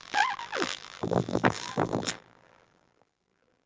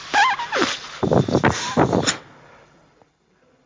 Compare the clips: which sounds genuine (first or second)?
second